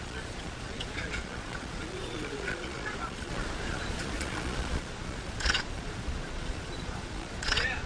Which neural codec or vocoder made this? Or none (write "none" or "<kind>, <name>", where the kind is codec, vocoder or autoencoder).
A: vocoder, Vocos